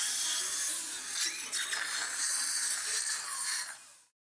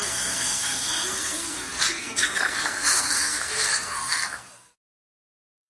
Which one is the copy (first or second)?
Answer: second